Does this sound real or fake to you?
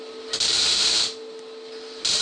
real